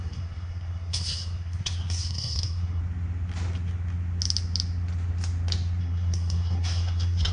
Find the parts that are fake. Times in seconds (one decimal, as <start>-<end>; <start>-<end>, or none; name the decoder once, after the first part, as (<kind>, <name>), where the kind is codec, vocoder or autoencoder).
0.0-2.8 (codec, SNAC); 5.8-7.3